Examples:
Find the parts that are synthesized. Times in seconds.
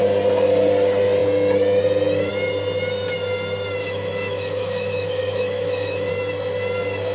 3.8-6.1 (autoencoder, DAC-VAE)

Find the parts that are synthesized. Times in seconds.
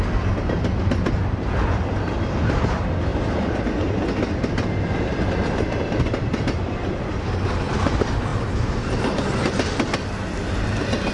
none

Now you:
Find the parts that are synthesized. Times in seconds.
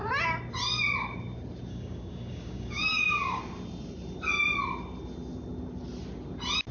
1.7-3.4 (codec, DAC)